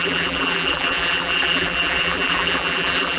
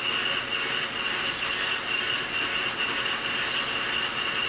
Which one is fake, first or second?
first